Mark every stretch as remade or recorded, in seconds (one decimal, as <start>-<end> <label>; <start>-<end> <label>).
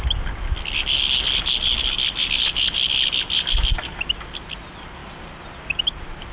0.0-6.3 recorded